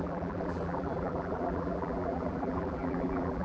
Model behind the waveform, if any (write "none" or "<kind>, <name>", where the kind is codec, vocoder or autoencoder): vocoder, BigVGAN v2